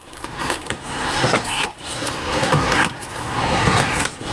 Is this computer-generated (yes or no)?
yes